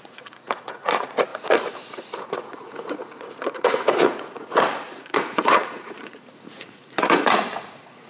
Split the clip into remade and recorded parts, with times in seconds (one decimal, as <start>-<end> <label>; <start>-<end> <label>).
0.0-8.1 remade